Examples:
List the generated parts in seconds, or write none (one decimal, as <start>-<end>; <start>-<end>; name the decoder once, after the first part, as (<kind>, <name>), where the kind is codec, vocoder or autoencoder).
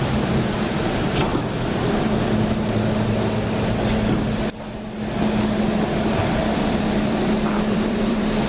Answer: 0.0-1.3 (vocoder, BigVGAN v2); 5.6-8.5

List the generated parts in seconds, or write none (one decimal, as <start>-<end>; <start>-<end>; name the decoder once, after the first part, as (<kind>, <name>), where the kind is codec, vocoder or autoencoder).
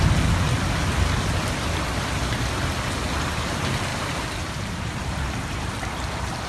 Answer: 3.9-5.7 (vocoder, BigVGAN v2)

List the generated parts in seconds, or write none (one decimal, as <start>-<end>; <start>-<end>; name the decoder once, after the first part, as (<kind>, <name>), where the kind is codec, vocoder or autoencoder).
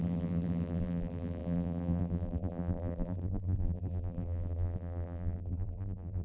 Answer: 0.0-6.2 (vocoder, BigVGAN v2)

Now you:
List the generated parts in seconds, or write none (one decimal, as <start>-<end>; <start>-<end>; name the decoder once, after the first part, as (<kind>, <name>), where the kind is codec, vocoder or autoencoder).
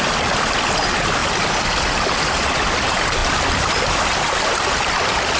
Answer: 0.0-3.2 (vocoder, BigVGAN v2); 4.0-5.4